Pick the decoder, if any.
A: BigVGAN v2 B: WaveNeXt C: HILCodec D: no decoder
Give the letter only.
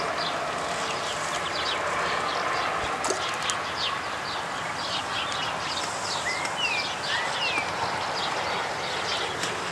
D